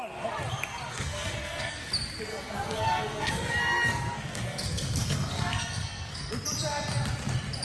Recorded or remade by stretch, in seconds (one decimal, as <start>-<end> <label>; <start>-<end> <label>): 0.0-0.9 recorded; 0.9-1.9 remade; 1.9-2.3 recorded; 2.3-6.3 remade; 6.3-7.6 recorded